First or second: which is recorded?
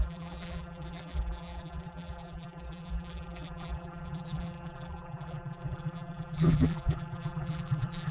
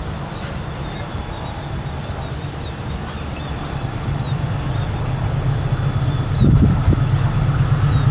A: second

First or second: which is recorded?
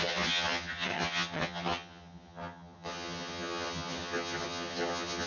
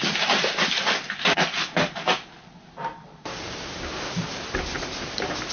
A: second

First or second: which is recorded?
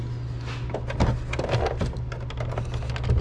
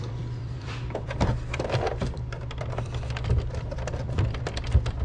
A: first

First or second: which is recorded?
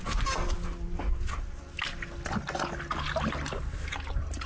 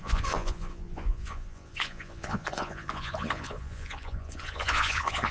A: first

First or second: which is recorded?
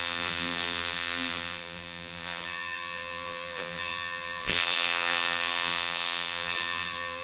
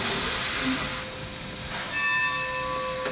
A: second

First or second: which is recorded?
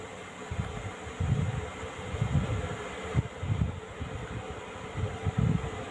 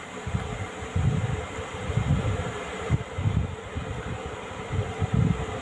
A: first